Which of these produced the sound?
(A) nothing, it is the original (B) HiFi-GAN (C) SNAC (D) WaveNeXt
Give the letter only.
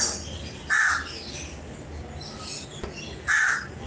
A